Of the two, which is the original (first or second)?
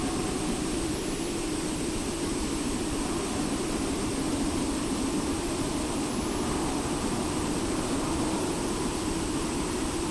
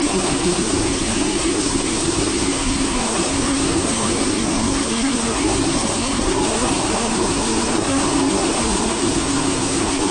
first